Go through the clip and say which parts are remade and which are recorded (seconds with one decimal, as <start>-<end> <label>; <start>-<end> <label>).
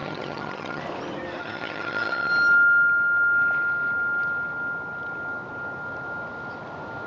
0.0-0.8 remade; 0.8-1.4 recorded; 1.4-2.3 remade; 2.3-7.1 recorded